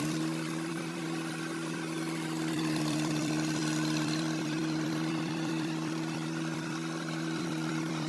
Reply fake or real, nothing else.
fake